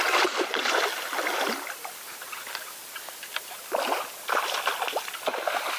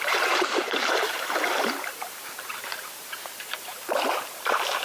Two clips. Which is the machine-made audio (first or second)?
second